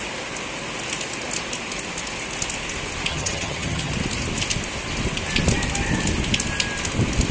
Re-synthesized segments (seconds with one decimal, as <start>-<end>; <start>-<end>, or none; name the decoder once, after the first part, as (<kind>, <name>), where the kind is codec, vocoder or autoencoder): 3.1-3.9 (vocoder, HiFi-GAN)